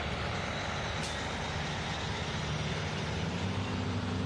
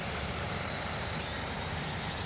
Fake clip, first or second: second